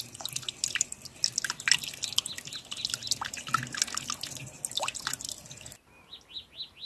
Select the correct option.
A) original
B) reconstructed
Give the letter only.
A